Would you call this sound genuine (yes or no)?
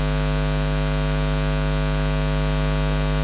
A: yes